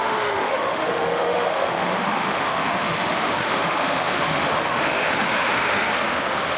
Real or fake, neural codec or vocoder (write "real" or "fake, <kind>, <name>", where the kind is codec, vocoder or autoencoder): fake, autoencoder, DAC-VAE